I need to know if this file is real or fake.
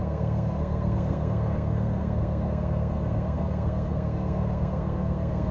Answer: fake